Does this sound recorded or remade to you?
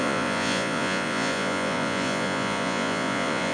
remade